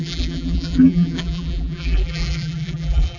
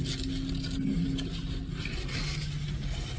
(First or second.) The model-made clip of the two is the first